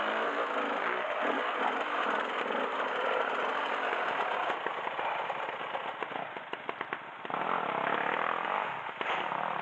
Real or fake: real